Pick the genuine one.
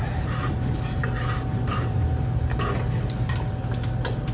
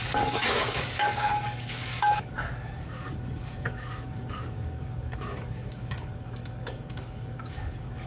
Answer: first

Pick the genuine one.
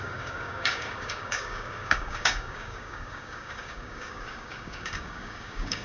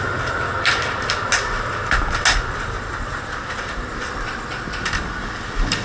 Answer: second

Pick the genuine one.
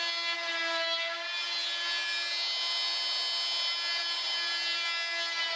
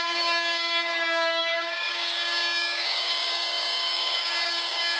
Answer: first